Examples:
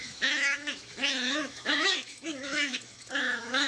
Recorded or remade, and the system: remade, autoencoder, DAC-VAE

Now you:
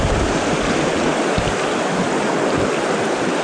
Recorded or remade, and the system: recorded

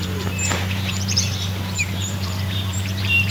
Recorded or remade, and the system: remade, vocoder, BigVGAN v2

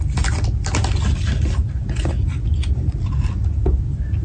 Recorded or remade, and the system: recorded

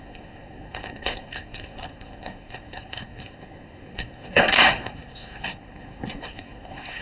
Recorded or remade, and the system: remade, codec, SNAC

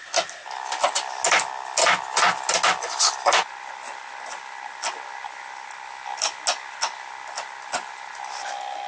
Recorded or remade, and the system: recorded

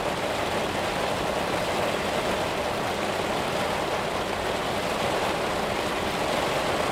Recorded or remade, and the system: recorded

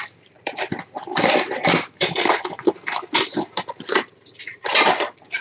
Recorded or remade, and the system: remade, vocoder, BigVGAN v2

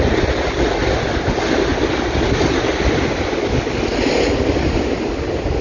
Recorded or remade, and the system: recorded